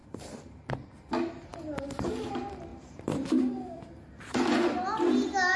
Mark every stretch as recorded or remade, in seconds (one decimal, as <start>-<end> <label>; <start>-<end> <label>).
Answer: 0.0-0.7 remade; 0.7-2.7 recorded; 2.7-4.4 remade; 4.4-5.6 recorded